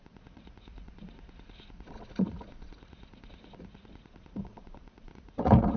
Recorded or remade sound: remade